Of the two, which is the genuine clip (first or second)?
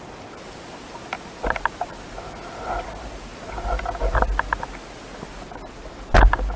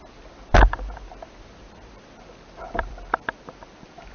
first